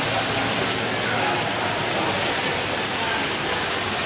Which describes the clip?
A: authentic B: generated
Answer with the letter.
A